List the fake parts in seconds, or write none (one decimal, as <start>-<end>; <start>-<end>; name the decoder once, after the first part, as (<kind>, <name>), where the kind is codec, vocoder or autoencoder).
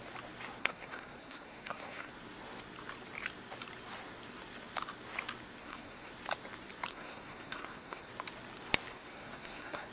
0.6-2.1 (codec, SNAC); 5.6-6.1; 6.9-8.1; 8.9-9.9